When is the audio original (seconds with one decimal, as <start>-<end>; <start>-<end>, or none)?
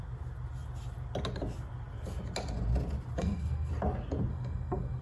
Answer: 0.0-3.2; 3.7-4.3